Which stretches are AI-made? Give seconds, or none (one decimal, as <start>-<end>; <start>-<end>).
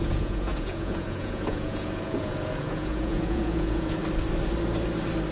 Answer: 0.0-4.0